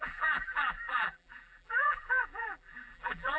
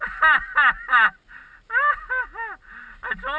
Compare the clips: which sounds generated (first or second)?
first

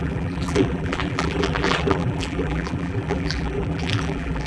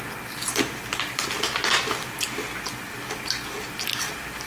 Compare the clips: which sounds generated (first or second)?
first